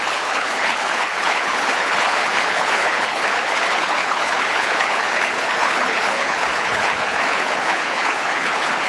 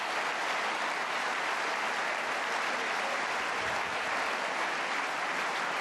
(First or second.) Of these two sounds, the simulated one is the first